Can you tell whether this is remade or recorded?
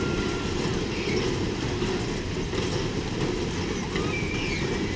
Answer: recorded